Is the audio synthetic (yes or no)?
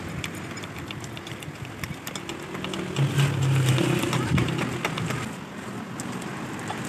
no